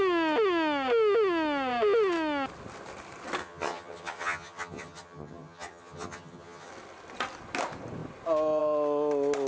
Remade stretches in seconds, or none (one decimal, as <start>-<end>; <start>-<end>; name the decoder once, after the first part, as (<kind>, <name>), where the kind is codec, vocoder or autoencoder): 3.4-6.7 (vocoder, HiFi-GAN)